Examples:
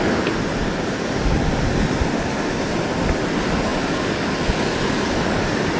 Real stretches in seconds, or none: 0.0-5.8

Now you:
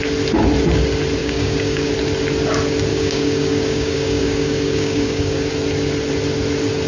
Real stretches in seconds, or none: 0.0-1.2; 1.9-2.9; 5.5-6.9

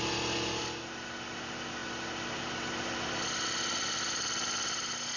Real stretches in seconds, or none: 0.0-5.2

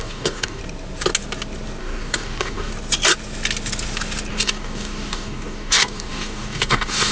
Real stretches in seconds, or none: 0.6-1.8; 2.7-4.3

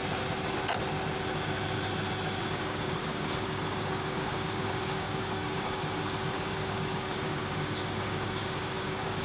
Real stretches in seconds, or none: 0.0-2.4